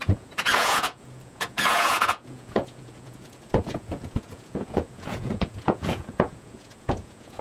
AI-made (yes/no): yes